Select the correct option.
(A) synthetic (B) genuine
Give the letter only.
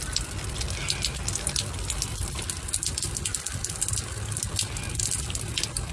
B